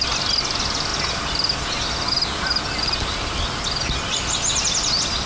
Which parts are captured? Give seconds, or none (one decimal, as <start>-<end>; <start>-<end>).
0.0-5.3